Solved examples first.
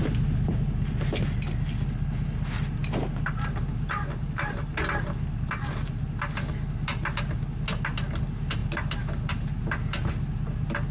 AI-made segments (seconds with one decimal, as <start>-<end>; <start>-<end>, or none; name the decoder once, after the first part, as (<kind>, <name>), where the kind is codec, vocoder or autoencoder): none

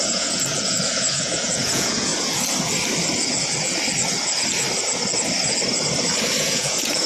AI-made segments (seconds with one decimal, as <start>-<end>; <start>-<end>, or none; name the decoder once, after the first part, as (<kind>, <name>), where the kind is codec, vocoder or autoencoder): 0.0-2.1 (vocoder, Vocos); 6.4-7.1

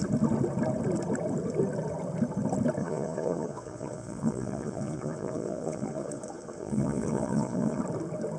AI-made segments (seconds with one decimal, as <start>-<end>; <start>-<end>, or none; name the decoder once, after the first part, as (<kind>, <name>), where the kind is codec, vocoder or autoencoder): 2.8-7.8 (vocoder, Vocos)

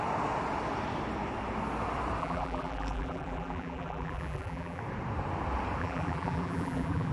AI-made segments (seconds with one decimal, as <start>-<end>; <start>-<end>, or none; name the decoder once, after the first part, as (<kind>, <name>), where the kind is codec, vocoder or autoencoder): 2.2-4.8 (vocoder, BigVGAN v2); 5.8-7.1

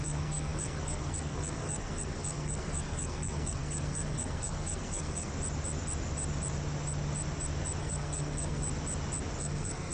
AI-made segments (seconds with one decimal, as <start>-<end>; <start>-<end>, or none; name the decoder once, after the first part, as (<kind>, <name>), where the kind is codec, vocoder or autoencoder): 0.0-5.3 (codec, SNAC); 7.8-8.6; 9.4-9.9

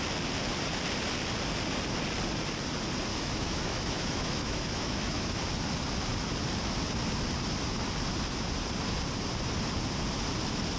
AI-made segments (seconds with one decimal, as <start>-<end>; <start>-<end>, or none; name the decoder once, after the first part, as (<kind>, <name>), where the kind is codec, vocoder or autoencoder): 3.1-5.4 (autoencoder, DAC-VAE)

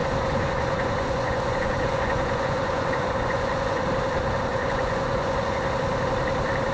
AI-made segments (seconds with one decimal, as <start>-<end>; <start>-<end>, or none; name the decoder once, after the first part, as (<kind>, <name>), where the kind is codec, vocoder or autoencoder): 0.0-3.8 (vocoder, Vocos); 4.5-5.6